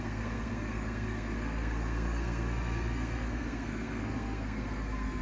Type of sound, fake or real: fake